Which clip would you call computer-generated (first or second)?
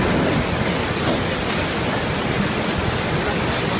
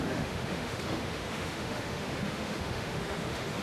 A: second